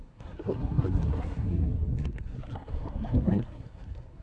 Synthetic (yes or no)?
yes